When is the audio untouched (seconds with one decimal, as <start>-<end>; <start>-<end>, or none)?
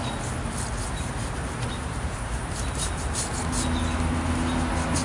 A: 0.0-0.8; 3.2-5.0